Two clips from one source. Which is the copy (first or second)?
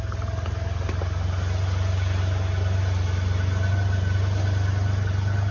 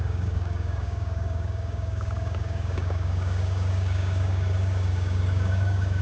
second